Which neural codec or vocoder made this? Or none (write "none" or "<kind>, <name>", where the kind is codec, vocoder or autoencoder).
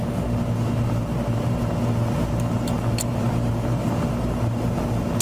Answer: none